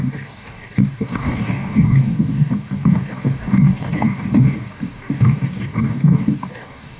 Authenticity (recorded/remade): remade